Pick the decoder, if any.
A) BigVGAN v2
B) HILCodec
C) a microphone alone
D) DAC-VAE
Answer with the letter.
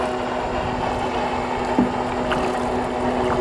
C